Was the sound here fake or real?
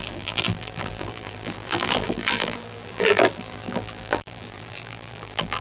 fake